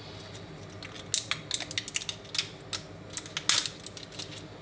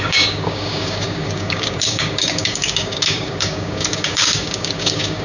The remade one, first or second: second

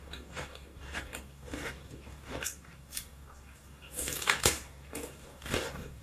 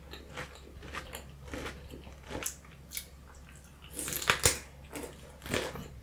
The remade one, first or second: first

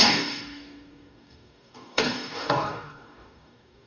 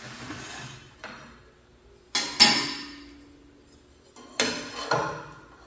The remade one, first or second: first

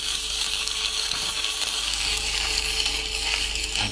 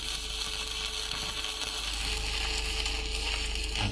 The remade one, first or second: first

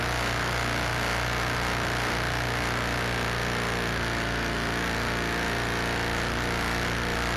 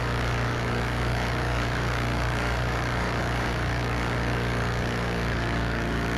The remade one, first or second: second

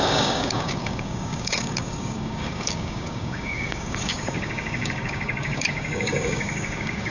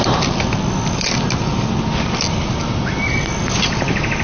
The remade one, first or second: first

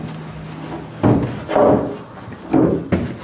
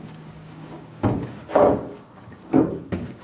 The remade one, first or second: second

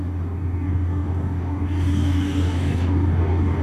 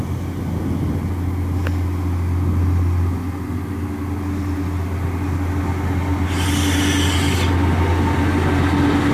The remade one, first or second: first